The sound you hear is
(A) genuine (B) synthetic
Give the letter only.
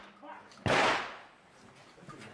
A